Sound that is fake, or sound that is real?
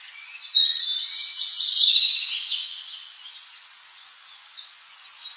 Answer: fake